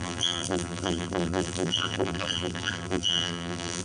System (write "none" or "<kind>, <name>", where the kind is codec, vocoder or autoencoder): vocoder, BigVGAN v2